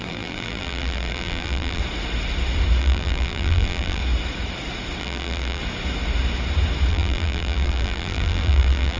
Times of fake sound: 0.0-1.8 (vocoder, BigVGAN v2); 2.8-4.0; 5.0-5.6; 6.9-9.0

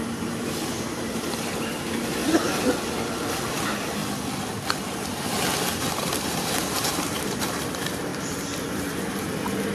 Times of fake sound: 0.0-2.2 (vocoder, BigVGAN v2); 3.3-4.0; 5.9-8.1; 8.6-9.7

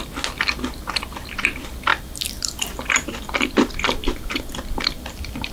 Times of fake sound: 1.9-5.5 (vocoder, BigVGAN v2)

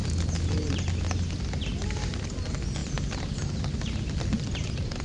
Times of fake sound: none

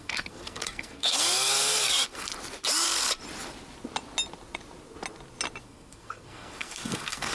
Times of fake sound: 0.0-2.3 (codec, SNAC); 5.6-7.3